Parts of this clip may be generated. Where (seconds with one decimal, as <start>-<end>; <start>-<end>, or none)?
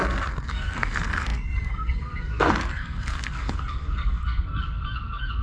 0.0-5.4